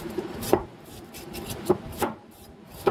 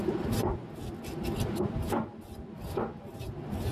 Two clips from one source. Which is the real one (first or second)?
second